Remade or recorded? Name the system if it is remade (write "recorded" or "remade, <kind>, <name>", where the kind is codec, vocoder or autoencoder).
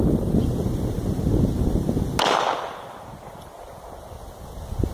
recorded